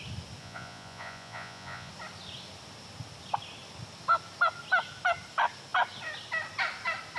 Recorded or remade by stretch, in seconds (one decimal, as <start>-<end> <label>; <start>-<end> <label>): 0.0-0.4 recorded; 0.4-1.9 remade; 1.9-7.2 recorded